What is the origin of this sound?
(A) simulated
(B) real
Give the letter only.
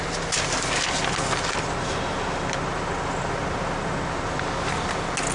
B